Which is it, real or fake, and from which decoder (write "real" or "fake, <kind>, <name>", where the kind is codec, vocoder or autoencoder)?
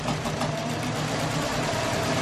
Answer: real